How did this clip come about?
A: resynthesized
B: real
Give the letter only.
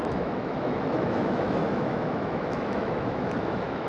A